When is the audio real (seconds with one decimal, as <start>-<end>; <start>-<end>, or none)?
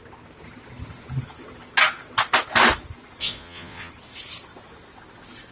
0.0-3.2; 3.9-5.5